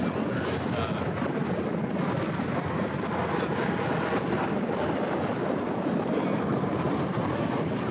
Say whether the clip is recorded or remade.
recorded